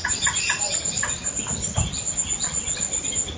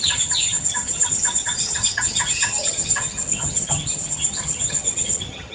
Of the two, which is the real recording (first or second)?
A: first